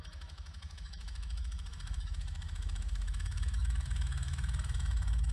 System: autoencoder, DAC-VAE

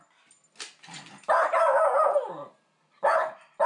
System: none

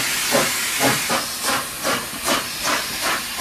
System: none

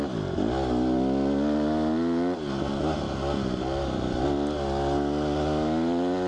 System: none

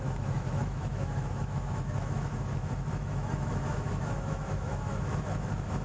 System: autoencoder, DAC-VAE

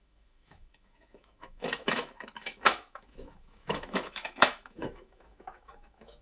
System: autoencoder, DAC-VAE